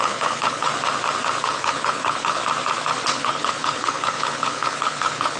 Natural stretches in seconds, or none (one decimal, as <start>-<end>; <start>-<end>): 0.7-1.4; 2.4-3.1